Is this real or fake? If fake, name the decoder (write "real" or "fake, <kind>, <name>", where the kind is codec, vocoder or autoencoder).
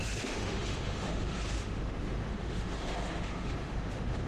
fake, autoencoder, DAC-VAE